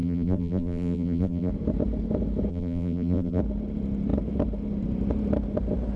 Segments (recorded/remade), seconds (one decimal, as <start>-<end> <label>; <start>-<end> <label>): 0.0-1.5 remade; 1.5-2.5 recorded; 2.5-3.4 remade; 3.4-6.0 recorded